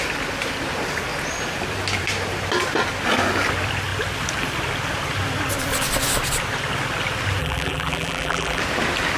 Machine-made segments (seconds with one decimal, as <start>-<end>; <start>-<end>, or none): 7.4-8.6